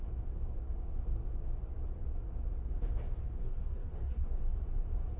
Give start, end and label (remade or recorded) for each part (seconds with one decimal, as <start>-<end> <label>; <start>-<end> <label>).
0.0-3.4 recorded; 3.4-4.4 remade; 4.4-5.2 recorded

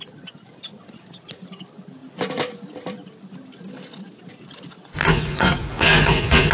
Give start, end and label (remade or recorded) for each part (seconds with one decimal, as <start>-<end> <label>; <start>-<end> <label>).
0.0-5.0 recorded; 5.0-6.5 remade

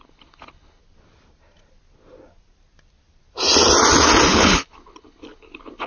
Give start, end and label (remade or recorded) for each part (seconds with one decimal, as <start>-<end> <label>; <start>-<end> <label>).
0.0-0.8 remade; 0.8-4.3 recorded; 4.3-5.9 remade

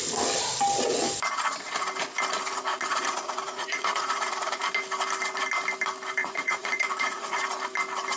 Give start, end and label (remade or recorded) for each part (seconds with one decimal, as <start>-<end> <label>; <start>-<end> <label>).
0.0-2.7 recorded; 2.7-4.7 remade; 4.7-6.2 recorded; 6.2-7.4 remade; 7.4-8.2 recorded

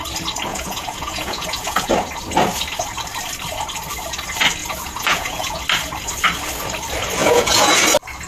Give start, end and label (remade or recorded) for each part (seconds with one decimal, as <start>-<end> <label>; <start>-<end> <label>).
0.0-0.5 recorded; 0.5-1.9 remade; 1.9-4.6 recorded; 4.6-5.6 remade; 5.6-7.2 recorded; 7.2-7.8 remade; 7.8-8.3 recorded

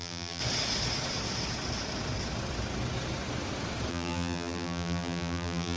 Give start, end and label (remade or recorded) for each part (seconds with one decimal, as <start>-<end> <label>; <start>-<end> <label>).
0.0-0.4 remade; 0.4-3.9 recorded; 3.9-5.8 remade